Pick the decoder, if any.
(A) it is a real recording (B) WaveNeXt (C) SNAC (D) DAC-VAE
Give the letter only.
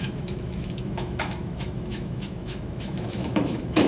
D